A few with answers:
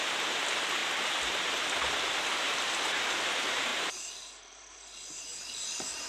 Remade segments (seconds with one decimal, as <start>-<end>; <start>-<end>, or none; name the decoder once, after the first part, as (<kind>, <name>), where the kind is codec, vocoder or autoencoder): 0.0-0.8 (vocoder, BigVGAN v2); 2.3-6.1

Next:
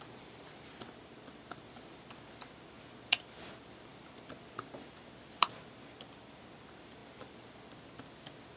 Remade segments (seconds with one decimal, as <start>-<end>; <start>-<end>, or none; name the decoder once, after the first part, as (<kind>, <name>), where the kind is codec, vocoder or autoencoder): 0.0-8.6 (vocoder, BigVGAN v2)

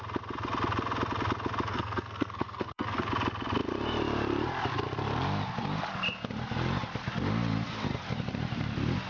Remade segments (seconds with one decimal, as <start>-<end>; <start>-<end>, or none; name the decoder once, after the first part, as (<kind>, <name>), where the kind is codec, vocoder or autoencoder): 1.7-3.1 (codec, SNAC)

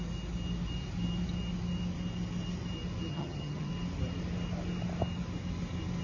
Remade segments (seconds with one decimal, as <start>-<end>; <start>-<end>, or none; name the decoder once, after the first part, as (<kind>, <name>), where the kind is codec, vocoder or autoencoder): 3.1-3.7 (vocoder, HiFi-GAN)

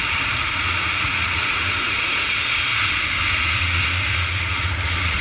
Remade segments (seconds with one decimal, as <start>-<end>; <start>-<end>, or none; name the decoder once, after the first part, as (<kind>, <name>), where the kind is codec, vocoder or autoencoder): 0.0-2.7 (vocoder, Vocos); 3.3-5.2